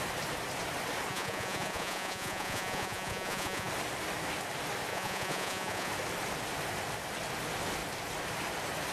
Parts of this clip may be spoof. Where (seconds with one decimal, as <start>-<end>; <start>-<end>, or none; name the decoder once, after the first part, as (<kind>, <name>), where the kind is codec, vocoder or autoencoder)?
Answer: 1.1-3.7 (vocoder, Vocos); 4.9-5.9